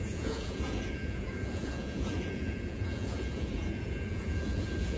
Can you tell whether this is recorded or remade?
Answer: remade